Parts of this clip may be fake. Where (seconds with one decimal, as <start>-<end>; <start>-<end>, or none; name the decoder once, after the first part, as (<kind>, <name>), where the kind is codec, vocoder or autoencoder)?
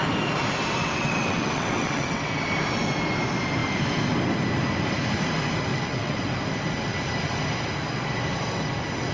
0.8-2.3 (vocoder, WaveNeXt); 5.7-6.3